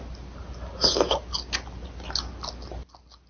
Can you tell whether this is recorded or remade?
recorded